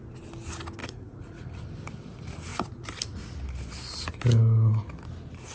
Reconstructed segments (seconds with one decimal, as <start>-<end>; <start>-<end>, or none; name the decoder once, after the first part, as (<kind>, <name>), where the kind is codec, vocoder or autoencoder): 0.8-1.6 (vocoder, Vocos)